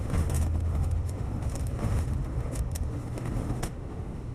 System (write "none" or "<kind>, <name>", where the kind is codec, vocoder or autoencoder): autoencoder, DAC-VAE